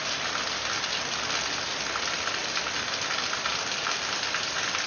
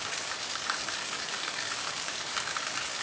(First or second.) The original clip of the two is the first